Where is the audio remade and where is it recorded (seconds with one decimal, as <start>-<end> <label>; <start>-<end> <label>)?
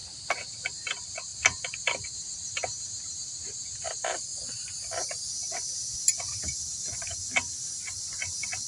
0.0-0.5 recorded; 0.5-4.3 remade; 4.3-7.8 recorded; 7.8-8.7 remade